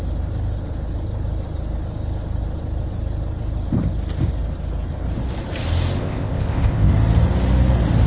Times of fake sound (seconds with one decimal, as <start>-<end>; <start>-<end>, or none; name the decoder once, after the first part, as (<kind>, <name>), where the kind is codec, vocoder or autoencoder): 6.0-6.9 (codec, ZipCodec)